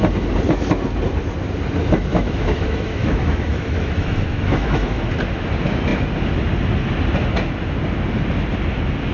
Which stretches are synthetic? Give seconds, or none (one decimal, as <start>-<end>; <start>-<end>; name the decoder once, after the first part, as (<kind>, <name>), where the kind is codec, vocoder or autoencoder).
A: 2.1-5.0 (autoencoder, DAC-VAE)